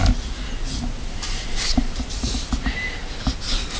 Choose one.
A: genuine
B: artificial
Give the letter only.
A